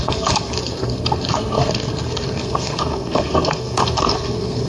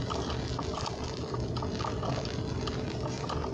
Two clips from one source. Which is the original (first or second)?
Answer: second